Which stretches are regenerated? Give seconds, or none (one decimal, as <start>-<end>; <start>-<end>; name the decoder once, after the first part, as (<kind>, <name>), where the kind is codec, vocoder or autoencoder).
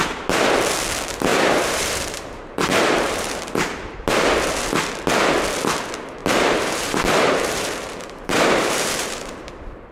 1.3-3.4 (vocoder, BigVGAN v2); 6.2-9.5